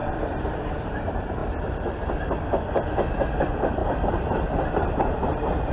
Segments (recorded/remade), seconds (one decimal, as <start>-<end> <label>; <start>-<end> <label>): 0.0-5.7 remade